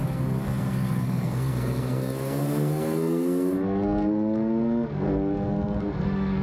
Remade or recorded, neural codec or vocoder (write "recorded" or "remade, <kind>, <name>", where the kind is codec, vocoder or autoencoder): remade, codec, SNAC